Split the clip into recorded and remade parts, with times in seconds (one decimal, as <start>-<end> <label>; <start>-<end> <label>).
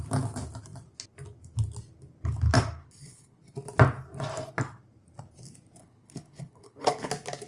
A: 0.0-2.8 recorded; 2.8-3.4 remade; 3.4-5.8 recorded; 5.8-7.1 remade; 7.1-7.5 recorded